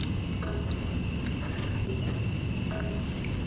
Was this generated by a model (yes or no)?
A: no